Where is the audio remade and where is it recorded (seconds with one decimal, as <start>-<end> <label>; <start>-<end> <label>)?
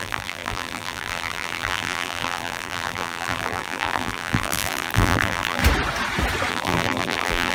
0.0-5.6 remade; 5.6-6.5 recorded; 6.5-7.5 remade